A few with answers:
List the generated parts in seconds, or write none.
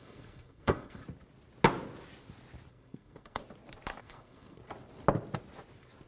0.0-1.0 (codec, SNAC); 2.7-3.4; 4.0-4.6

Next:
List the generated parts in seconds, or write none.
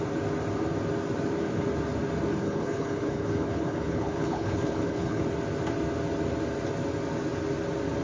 2.4-5.2 (codec, HILCodec)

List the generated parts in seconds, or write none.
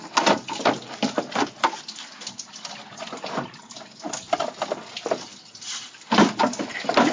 none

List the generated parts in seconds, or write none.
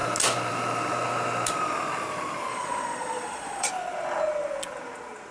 2.5-3.7 (vocoder, Vocos)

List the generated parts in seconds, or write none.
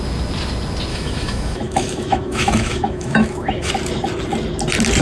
0.9-3.7 (autoencoder, DAC-VAE)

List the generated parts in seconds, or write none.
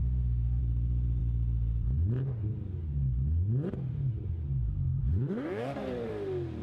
0.0-0.6 (autoencoder, DAC-VAE); 5.0-6.1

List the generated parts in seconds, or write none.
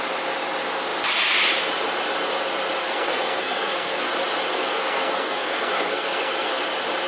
2.8-4.1 (codec, SNAC); 4.5-6.6